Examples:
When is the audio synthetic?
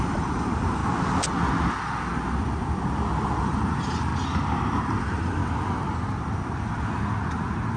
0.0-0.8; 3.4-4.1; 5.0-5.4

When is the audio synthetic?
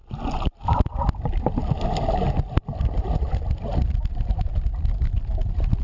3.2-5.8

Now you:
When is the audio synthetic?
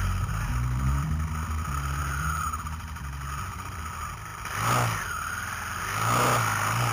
none